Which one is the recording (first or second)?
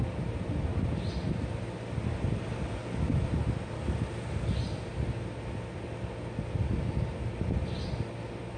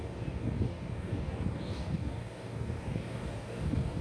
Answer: first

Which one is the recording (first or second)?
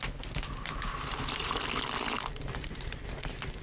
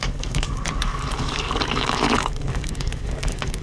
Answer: first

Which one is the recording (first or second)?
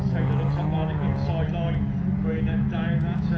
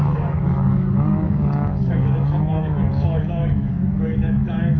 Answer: first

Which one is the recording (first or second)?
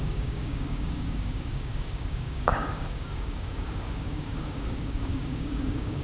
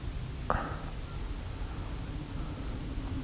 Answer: second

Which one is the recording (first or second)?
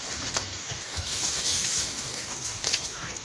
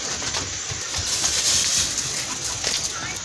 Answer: second